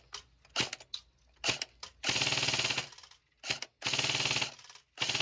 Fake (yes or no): no